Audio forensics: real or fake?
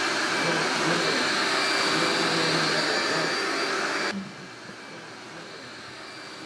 real